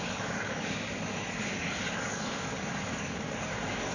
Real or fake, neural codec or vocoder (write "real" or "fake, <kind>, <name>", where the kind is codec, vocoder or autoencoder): fake, codec, DAC